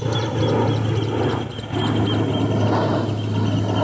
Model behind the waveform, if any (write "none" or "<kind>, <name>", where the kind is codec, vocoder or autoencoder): none